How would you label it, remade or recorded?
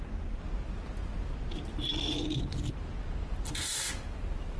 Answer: recorded